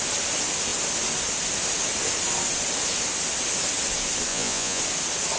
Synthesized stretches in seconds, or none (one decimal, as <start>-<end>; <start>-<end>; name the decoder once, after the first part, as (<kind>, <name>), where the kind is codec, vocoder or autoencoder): 4.3-4.8 (vocoder, Vocos)